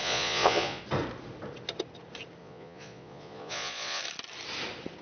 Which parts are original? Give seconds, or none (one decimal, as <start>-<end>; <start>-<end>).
0.8-2.4; 4.0-5.0